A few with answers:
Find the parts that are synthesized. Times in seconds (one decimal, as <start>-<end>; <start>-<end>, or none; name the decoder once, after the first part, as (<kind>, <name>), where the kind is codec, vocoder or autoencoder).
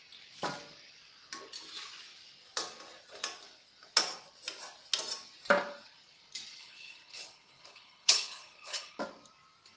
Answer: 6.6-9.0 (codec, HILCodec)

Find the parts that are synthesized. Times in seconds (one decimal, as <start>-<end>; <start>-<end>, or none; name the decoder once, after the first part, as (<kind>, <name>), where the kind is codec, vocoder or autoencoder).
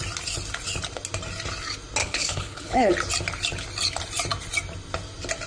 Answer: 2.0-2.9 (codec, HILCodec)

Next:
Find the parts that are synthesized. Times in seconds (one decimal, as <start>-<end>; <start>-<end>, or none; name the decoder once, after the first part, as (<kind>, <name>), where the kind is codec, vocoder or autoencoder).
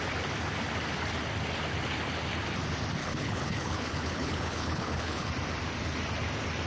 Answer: 3.0-5.3 (codec, HILCodec)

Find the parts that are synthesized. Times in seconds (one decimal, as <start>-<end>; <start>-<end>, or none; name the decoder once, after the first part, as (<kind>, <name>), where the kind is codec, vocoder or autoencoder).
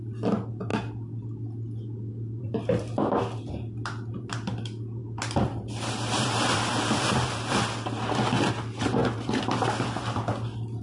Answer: none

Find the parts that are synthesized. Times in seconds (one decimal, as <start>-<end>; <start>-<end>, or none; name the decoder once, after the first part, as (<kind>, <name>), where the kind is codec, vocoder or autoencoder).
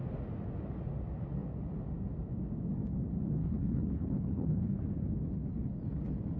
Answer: 3.4-4.8 (codec, HILCodec)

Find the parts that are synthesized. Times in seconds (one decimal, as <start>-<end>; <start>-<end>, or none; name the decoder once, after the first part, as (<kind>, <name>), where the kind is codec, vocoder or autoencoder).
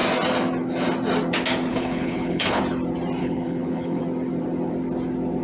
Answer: 1.7-2.6 (codec, HILCodec); 3.2-4.0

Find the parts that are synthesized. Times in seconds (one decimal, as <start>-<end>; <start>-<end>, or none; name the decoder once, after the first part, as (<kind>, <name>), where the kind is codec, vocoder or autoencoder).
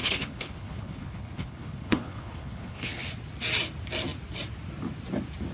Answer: 0.0-3.1 (codec, HILCodec)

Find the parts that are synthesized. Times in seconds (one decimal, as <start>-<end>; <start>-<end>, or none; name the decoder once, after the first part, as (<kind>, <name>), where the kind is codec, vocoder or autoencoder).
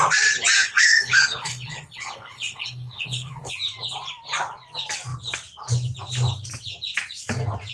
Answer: 0.6-3.5 (codec, HILCodec)